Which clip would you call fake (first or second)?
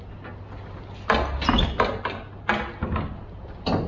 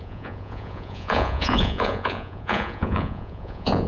second